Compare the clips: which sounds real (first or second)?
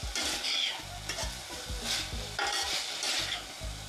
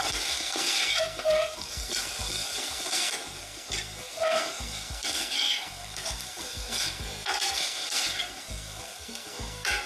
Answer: first